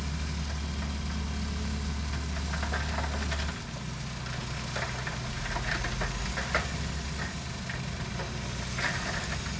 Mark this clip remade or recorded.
recorded